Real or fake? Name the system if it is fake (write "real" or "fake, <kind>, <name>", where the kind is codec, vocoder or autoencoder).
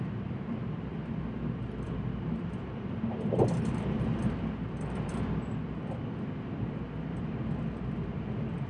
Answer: fake, vocoder, BigVGAN v2